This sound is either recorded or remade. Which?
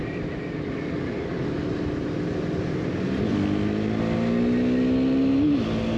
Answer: recorded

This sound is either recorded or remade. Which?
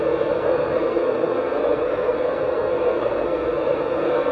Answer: remade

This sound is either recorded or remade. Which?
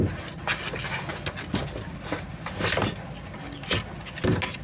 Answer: recorded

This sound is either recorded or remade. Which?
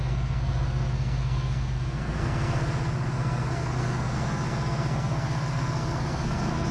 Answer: remade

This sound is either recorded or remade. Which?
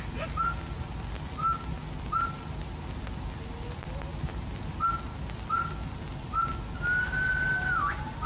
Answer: recorded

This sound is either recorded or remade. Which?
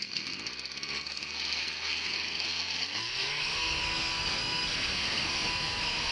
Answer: remade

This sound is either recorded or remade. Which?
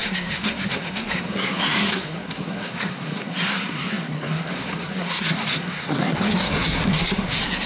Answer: remade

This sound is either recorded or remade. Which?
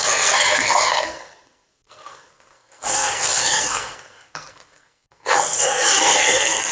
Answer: remade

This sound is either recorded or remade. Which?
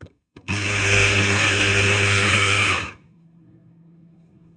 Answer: remade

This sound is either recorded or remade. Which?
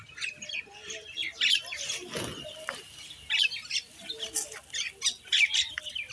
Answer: recorded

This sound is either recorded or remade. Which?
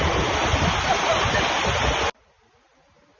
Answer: recorded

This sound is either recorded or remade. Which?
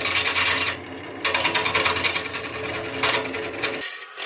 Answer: recorded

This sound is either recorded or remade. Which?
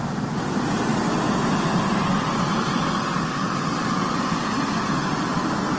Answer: recorded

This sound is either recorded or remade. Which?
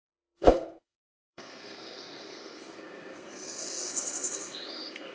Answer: remade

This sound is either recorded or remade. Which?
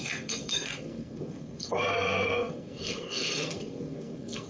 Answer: remade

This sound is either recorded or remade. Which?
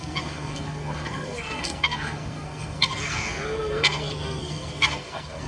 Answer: remade